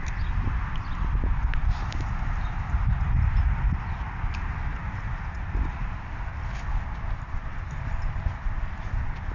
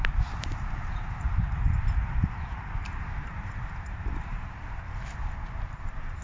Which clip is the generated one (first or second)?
second